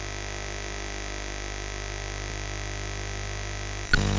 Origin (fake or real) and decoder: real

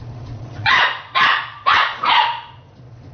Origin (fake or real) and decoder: fake, vocoder, Vocos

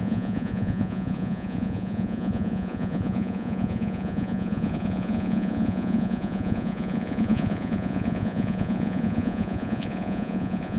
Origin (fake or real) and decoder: fake, vocoder, Vocos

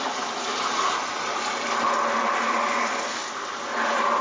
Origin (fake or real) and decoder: real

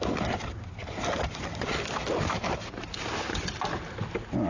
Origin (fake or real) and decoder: real